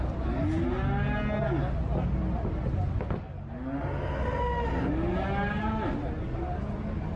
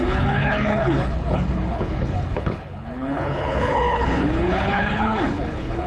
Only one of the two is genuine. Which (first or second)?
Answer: first